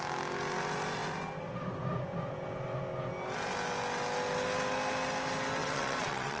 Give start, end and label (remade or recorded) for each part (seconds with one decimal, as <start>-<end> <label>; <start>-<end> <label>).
0.0-5.6 recorded; 5.6-6.4 remade